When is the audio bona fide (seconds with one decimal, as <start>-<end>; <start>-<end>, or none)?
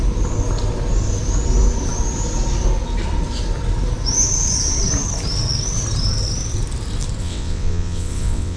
0.0-7.2